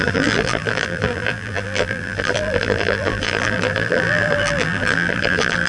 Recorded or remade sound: remade